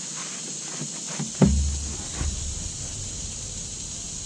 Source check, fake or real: real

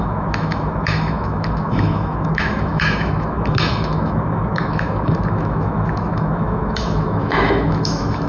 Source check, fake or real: fake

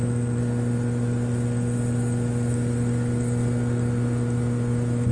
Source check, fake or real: real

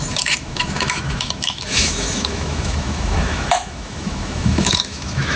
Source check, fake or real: fake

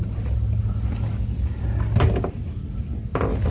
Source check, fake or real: real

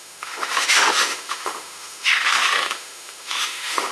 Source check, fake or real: fake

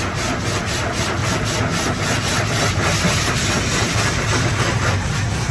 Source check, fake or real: real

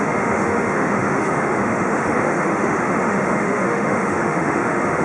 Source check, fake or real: fake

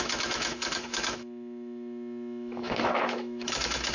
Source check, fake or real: fake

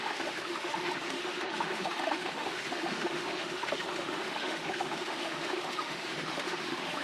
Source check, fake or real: fake